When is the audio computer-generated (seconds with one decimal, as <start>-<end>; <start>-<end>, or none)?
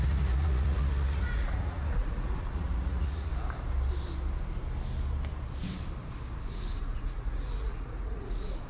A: 0.0-3.3; 6.8-8.7